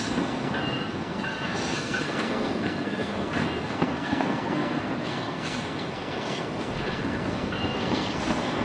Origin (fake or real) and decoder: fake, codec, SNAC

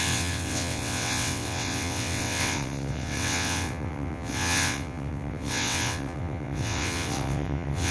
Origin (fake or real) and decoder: fake, vocoder, WaveNeXt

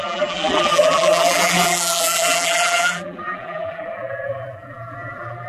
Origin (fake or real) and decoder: fake, vocoder, BigVGAN v2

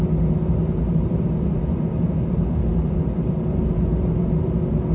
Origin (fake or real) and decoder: real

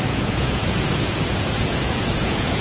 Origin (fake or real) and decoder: fake, vocoder, Vocos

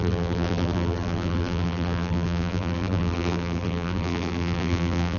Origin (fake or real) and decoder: fake, vocoder, BigVGAN v2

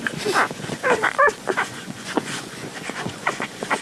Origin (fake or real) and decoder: fake, vocoder, Vocos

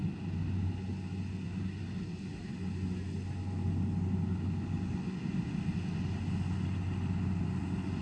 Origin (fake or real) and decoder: real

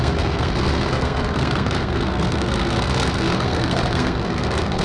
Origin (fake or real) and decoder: fake, codec, SNAC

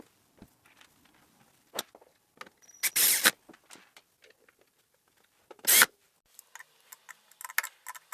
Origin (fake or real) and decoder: real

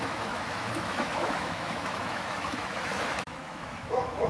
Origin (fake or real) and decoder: fake, autoencoder, DAC-VAE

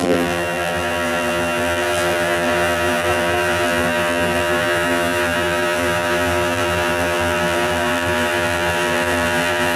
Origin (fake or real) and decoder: fake, vocoder, BigVGAN v2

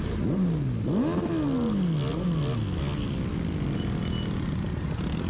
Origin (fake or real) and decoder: real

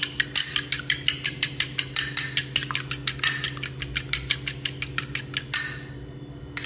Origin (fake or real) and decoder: real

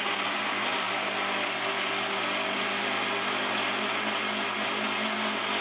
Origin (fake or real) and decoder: real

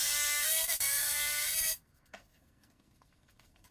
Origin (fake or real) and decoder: fake, codec, SNAC